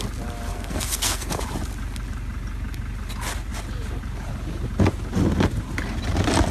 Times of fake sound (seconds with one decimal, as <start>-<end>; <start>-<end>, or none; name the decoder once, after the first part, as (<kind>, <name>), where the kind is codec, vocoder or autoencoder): 0.5-1.4 (codec, SNAC)